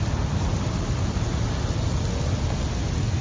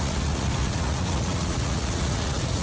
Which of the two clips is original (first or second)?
first